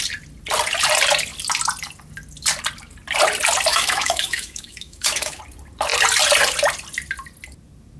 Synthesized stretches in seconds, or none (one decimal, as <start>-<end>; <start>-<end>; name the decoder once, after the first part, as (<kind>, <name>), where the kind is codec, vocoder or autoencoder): 3.7-5.4 (autoencoder, DAC-VAE)